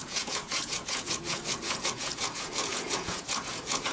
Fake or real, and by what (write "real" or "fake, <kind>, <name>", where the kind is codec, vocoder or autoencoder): fake, vocoder, Vocos